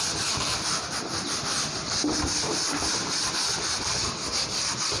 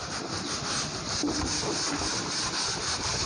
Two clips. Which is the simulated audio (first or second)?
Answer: second